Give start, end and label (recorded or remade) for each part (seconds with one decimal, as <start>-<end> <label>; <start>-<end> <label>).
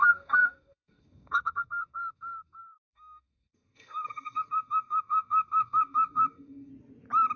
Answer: 0.0-6.7 remade; 6.7-7.4 recorded